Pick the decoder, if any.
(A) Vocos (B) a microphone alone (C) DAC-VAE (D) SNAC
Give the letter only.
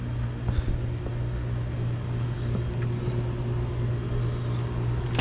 B